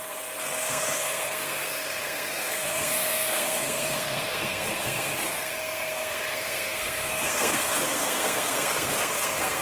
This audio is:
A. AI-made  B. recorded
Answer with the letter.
A